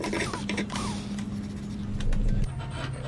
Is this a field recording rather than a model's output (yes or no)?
yes